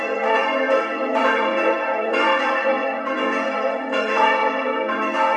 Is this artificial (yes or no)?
yes